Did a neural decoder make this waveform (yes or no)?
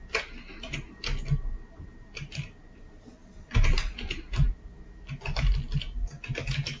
no